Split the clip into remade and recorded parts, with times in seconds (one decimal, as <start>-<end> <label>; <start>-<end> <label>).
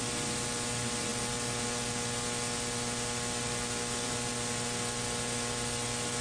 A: 0.0-6.2 recorded